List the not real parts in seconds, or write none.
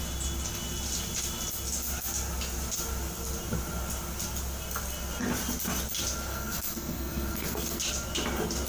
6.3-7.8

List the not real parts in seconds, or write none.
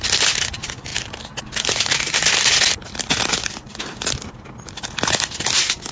none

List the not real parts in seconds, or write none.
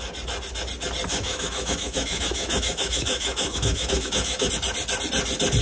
1.1-4.5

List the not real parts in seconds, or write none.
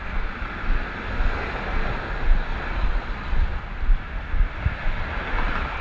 2.5-3.6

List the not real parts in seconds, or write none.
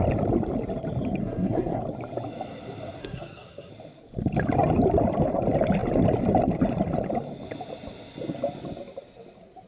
1.2-1.8; 3.0-3.7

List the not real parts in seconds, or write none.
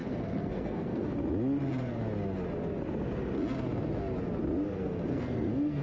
0.0-1.2; 4.7-5.8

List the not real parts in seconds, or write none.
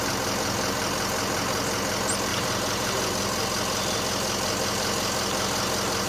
2.3-2.9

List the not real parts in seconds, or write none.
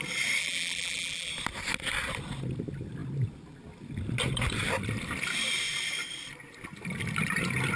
0.4-1.3